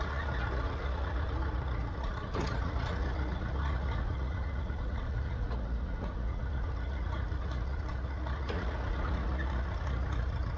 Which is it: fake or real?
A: fake